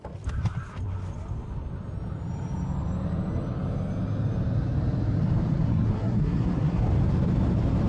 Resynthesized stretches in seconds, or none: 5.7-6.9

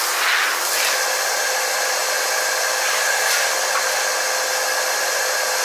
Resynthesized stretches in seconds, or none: none

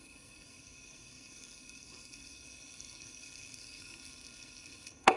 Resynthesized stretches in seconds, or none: 0.0-5.2

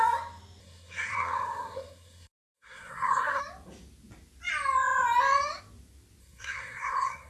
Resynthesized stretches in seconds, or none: 0.6-3.4; 6.2-7.3

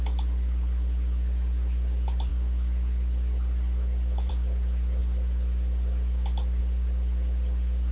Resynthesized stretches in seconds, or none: none

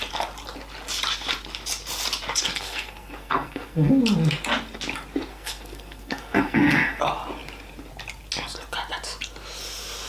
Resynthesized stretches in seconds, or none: 2.4-4.0; 5.3-7.0

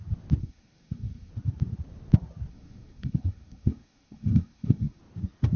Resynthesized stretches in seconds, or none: 0.4-1.3; 2.5-5.0